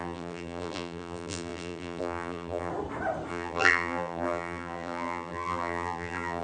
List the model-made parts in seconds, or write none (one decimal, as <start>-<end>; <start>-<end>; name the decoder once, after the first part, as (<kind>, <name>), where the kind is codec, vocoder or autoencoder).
0.0-2.7 (vocoder, BigVGAN v2); 3.3-6.4